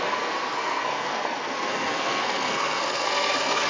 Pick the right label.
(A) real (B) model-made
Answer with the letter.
B